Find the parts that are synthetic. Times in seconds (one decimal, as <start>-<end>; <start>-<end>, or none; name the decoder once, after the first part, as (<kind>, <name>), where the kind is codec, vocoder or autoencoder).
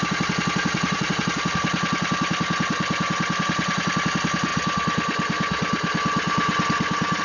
0.6-1.2 (vocoder, Vocos)